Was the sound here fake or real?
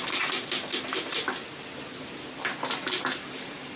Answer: real